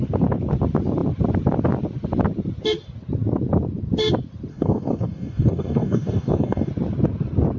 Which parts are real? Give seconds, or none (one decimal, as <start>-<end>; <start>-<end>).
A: 0.0-4.5; 6.7-7.6